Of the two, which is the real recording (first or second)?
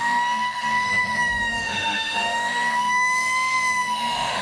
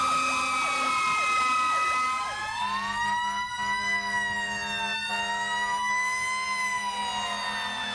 second